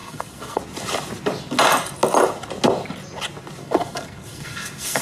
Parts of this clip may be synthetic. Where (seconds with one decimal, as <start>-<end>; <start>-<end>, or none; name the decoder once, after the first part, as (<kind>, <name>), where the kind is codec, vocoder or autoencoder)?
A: 0.0-0.6 (codec, SNAC); 3.6-5.0